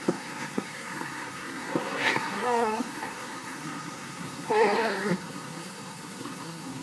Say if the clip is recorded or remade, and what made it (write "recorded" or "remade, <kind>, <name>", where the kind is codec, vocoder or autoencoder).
remade, codec, SNAC